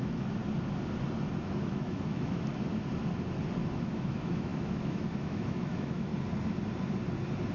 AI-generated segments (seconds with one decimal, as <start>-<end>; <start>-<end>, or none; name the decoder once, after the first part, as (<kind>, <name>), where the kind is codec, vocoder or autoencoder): 0.0-0.4 (autoencoder, DAC-VAE); 1.4-2.5; 3.6-6.1